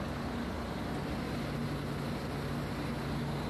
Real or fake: real